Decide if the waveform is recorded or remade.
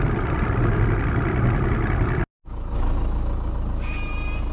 recorded